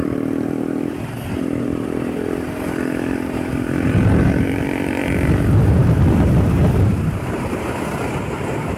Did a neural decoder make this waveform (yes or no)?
yes